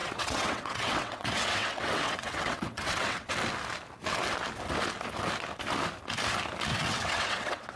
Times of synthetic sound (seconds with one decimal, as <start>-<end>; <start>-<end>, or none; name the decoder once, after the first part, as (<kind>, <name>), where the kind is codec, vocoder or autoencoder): 0.0-3.3 (vocoder, WaveNeXt); 6.7-7.8